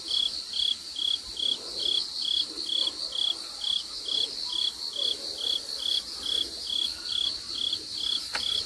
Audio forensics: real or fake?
real